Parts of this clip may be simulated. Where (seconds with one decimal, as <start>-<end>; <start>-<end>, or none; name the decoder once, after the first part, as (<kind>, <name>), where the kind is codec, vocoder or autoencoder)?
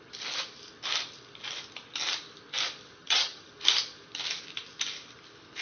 3.0-3.5 (vocoder, HiFi-GAN)